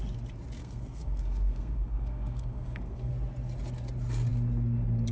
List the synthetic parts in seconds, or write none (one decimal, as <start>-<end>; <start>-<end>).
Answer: 0.6-3.1